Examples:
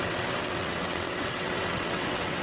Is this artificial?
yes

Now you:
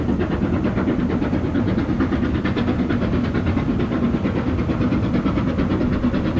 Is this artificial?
no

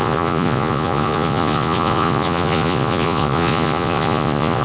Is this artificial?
yes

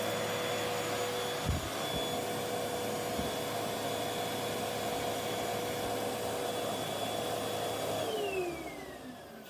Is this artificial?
no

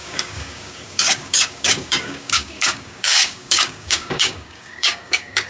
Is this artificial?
yes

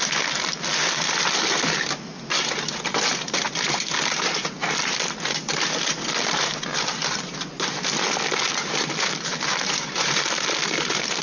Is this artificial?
no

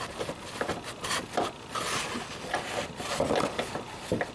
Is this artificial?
no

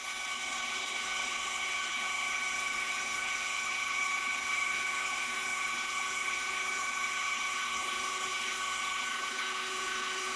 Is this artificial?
yes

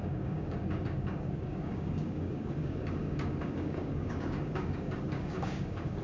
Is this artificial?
yes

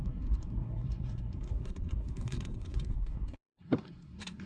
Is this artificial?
yes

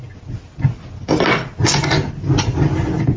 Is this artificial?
no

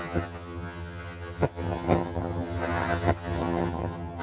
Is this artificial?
yes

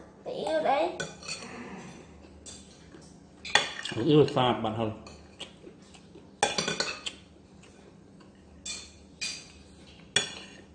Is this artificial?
no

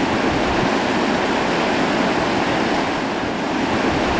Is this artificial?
no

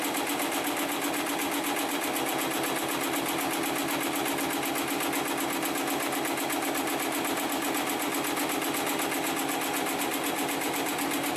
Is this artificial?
no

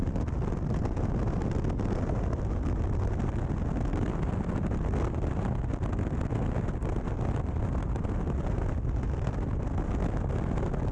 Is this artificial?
no